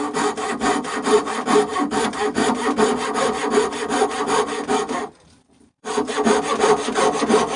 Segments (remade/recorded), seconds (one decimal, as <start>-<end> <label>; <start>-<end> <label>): 0.0-1.7 recorded; 1.7-2.3 remade; 2.3-5.0 recorded; 5.0-6.1 remade; 6.1-7.6 recorded